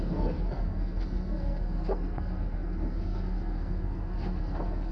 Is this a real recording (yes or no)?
no